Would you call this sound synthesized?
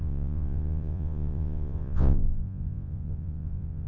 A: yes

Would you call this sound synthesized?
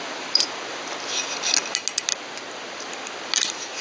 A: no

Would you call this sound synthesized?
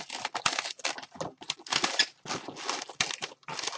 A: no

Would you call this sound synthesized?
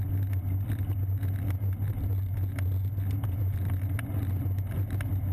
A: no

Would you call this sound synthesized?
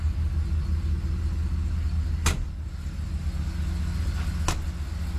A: no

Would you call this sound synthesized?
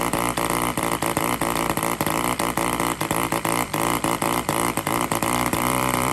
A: yes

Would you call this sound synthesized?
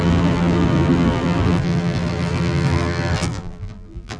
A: yes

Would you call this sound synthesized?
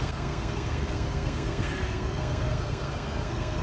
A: yes